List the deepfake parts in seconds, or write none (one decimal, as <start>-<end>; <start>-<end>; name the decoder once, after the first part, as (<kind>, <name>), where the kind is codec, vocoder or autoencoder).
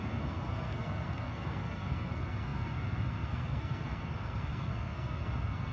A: 0.0-5.7 (codec, SNAC)